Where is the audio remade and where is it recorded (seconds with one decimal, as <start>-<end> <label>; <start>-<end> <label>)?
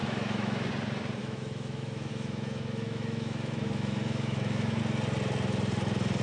0.0-0.7 remade; 0.7-1.2 recorded; 1.2-4.8 remade; 4.8-6.2 recorded